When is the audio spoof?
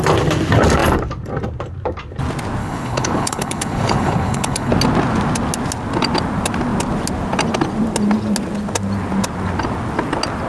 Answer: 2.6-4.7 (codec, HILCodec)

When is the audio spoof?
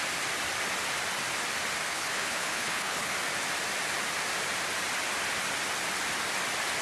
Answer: 1.9-3.1 (codec, HILCodec)